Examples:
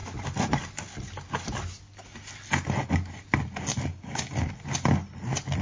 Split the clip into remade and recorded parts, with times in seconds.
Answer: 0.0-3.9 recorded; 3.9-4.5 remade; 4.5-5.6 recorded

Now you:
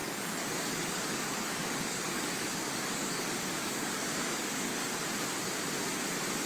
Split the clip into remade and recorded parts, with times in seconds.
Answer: 0.0-4.8 remade; 4.8-6.5 recorded